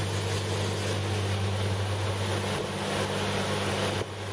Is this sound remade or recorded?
recorded